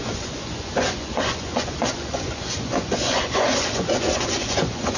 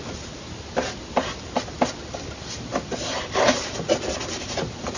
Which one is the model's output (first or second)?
first